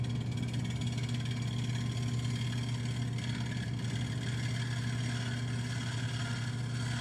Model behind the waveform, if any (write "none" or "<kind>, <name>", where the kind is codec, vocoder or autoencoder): none